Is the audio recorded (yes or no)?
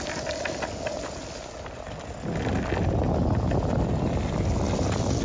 yes